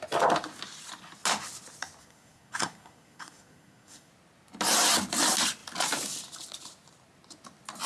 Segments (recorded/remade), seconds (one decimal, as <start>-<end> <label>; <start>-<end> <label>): 0.0-2.0 recorded; 2.0-4.1 remade; 4.1-7.9 recorded